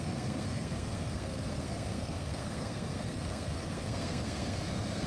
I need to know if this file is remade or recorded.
remade